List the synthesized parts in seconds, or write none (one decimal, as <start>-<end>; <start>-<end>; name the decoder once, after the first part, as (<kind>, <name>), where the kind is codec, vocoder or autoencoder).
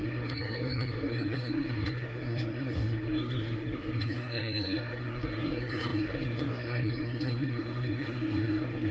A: 0.0-8.9 (codec, SNAC)